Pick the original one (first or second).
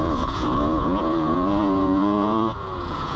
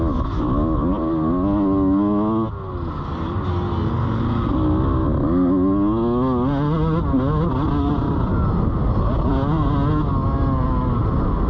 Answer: second